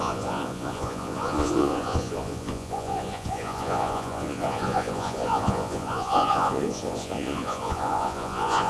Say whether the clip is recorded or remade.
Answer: remade